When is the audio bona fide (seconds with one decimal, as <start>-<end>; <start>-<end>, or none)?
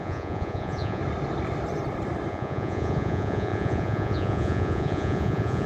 1.0-2.3